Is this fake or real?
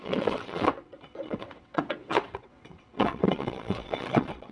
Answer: fake